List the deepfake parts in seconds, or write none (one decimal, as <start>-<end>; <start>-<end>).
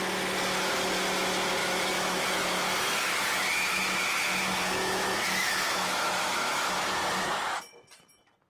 1.6-6.7